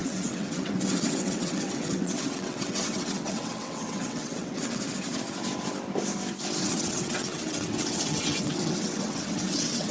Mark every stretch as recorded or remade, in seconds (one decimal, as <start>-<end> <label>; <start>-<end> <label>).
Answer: 0.0-4.8 remade; 4.8-6.6 recorded; 6.6-9.9 remade